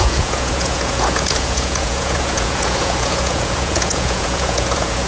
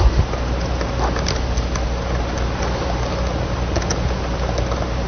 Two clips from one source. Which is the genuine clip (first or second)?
second